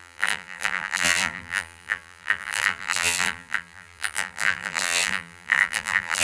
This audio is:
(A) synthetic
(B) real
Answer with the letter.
A